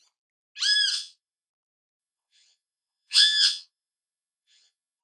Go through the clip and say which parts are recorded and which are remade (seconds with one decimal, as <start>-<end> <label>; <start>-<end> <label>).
0.0-0.9 recorded; 0.9-1.5 remade; 1.5-2.0 recorded; 2.0-5.0 remade